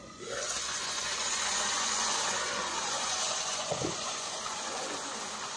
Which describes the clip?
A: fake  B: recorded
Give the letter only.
A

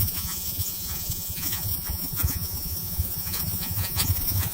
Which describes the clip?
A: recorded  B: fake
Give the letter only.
B